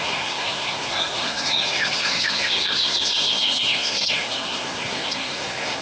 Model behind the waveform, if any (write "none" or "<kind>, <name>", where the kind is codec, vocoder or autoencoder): codec, SNAC